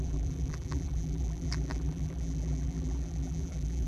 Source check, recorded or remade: remade